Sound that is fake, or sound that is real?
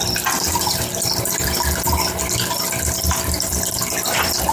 real